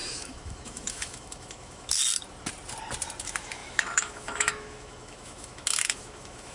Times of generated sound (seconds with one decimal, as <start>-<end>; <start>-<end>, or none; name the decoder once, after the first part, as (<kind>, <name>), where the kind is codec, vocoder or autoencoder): 0.0-2.0 (autoencoder, DAC-VAE); 3.2-6.5

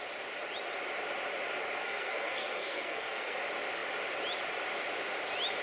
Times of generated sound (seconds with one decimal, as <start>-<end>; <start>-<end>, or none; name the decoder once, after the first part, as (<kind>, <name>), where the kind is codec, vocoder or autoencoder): 1.8-3.4 (codec, SNAC)

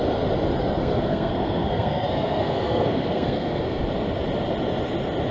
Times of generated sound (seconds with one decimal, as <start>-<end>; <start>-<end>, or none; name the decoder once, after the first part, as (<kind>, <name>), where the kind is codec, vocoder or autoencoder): 0.8-3.8 (codec, SNAC)

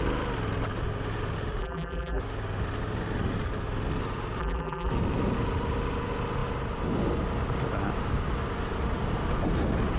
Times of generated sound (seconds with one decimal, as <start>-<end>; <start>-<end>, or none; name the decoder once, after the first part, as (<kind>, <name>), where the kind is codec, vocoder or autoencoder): 1.6-2.2 (vocoder, BigVGAN v2); 4.4-4.9

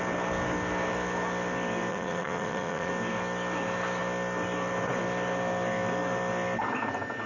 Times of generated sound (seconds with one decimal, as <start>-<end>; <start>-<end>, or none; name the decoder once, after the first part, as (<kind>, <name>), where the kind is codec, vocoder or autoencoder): 1.9-2.9 (vocoder, Vocos)

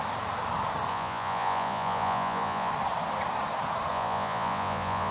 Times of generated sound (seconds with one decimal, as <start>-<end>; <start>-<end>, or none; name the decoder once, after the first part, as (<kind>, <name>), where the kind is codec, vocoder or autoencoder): 0.9-2.7 (vocoder, Vocos); 3.9-5.1

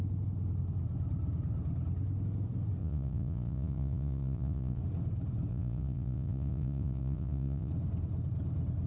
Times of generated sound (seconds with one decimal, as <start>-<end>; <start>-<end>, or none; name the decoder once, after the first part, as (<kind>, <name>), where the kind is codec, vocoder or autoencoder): 2.8-4.8 (vocoder, Vocos); 5.5-7.7